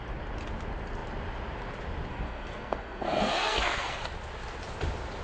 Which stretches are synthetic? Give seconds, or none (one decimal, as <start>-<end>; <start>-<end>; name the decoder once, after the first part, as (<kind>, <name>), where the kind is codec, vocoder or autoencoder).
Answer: 2.1-4.0 (codec, SNAC)